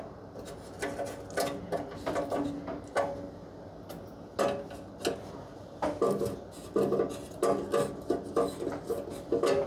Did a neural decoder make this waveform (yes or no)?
no